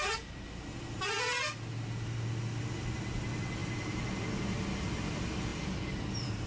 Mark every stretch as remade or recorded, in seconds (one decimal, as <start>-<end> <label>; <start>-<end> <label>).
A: 0.0-3.6 recorded; 3.6-4.2 remade; 4.2-5.5 recorded; 5.5-6.5 remade